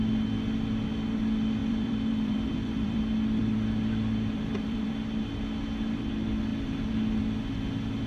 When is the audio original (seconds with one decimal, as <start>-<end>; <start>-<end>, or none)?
0.0-1.6; 3.0-3.4; 4.9-8.1